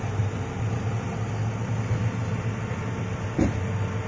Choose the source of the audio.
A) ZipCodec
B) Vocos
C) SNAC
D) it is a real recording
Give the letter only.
D